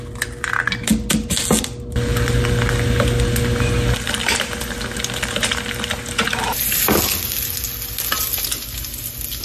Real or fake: real